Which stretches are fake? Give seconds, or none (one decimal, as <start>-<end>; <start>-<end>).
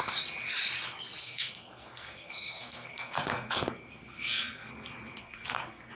1.2-4.7; 5.2-5.9